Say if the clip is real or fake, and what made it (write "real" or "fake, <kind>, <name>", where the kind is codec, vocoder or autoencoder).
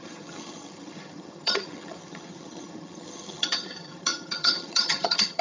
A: fake, vocoder, HiFi-GAN